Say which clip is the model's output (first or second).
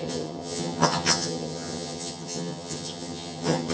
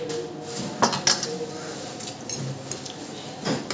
first